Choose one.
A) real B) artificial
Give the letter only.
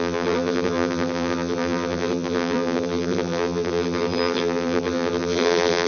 B